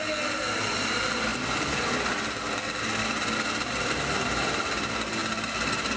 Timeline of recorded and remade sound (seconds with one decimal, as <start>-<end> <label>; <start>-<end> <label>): 0.0-6.0 recorded